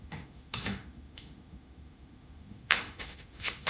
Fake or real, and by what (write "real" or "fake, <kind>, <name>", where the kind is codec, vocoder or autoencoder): fake, autoencoder, DAC-VAE